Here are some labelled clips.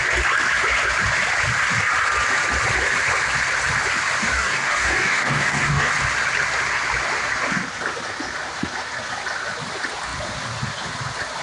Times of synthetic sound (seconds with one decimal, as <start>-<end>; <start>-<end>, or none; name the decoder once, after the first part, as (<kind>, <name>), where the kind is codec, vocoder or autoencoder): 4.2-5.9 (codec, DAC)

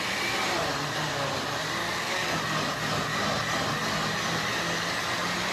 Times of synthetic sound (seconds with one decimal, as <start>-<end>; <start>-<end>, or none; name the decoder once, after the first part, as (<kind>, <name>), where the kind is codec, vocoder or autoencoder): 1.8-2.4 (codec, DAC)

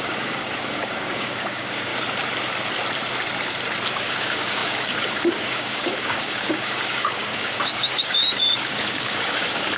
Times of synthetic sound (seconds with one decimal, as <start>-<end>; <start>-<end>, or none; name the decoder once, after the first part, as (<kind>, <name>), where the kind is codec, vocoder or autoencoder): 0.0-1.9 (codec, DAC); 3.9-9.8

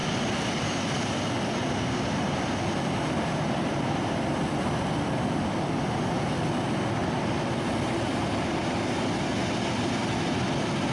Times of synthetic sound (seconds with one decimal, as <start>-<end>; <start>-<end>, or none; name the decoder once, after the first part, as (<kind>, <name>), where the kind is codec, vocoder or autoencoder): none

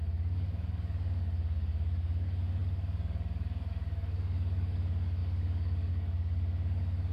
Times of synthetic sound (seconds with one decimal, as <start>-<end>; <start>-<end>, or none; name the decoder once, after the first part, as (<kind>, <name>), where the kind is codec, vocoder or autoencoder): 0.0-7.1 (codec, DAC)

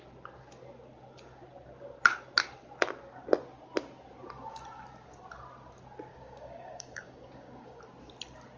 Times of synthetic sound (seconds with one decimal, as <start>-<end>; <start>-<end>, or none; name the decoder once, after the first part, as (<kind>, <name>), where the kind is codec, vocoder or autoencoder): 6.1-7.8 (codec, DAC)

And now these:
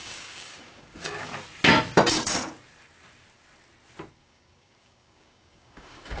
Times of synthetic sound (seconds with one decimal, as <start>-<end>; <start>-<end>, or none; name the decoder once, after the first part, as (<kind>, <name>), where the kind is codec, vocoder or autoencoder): 0.0-1.3 (codec, DAC); 4.2-6.2